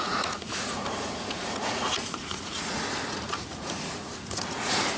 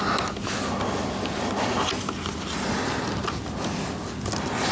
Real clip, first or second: second